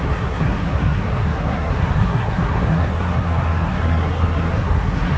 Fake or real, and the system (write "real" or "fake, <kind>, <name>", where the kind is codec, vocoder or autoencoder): fake, codec, SNAC